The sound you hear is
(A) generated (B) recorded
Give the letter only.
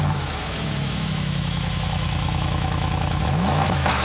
A